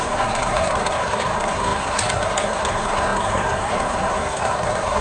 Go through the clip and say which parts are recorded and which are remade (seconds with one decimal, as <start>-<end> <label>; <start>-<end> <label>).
0.0-5.0 remade